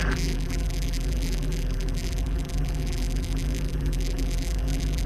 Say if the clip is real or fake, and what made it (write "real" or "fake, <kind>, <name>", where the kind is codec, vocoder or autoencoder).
fake, vocoder, BigVGAN v2